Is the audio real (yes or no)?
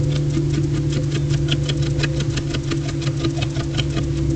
yes